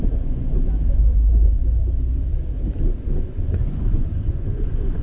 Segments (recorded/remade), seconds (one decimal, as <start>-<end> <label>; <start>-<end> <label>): 0.0-1.6 remade; 1.6-3.0 recorded; 3.0-5.0 remade